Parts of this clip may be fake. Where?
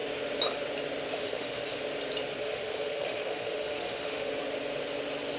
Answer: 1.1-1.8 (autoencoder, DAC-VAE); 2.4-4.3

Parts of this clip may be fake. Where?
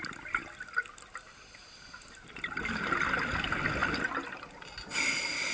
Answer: none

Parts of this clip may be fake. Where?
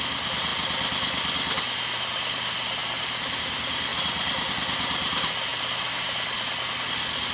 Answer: 3.9-4.5 (vocoder, BigVGAN v2); 5.5-6.4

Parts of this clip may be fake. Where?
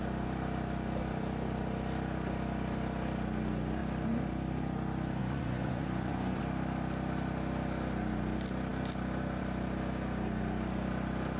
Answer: 5.2-6.4 (vocoder, Vocos)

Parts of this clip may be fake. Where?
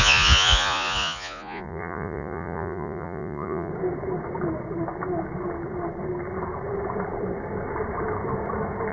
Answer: 0.0-3.7 (vocoder, Vocos)